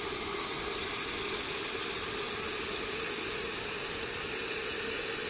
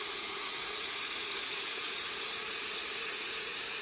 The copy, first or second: second